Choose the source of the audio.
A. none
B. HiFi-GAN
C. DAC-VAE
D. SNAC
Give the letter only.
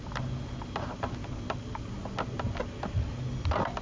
A